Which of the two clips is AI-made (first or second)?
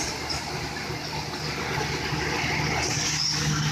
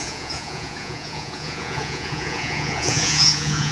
second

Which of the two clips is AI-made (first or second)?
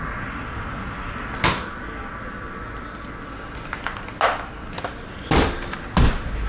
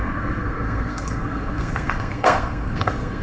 second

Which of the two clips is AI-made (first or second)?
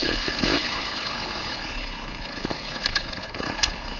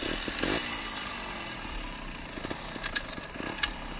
first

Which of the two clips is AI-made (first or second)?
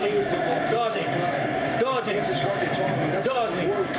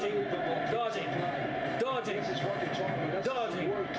first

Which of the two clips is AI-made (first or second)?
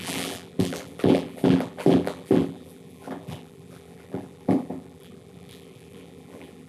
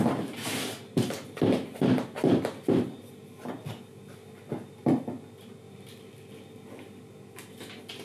first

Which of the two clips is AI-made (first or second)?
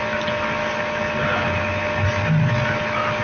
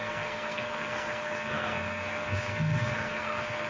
second